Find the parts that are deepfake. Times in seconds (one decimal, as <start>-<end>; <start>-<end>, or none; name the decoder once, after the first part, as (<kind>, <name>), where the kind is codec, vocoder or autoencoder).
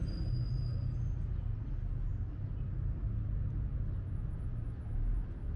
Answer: none